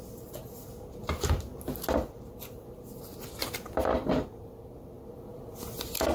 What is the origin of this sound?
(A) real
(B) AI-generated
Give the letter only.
A